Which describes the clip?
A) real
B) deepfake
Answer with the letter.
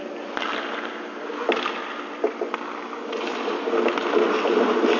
A